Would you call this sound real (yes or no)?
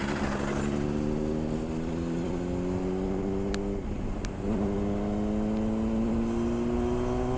yes